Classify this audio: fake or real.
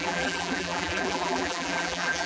fake